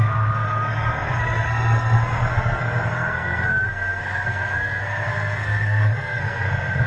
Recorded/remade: remade